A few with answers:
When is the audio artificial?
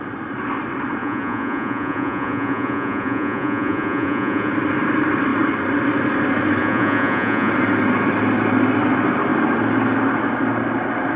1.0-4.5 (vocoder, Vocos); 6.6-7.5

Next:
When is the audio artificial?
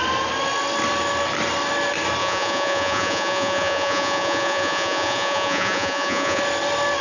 2.2-6.4 (vocoder, Vocos)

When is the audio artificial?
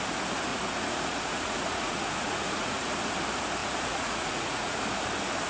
0.5-3.1 (vocoder, Vocos); 3.6-4.8